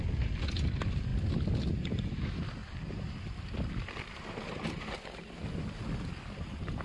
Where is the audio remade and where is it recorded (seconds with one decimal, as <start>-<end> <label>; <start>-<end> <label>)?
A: 0.0-6.8 recorded